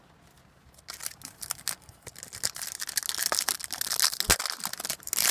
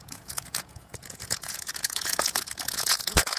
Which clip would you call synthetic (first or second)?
second